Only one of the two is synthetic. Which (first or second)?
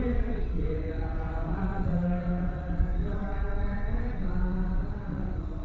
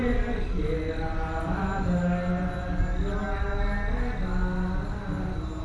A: first